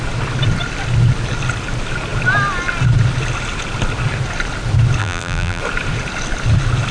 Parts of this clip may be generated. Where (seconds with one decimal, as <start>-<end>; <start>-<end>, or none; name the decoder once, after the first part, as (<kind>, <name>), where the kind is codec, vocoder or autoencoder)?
5.0-5.6 (vocoder, BigVGAN v2)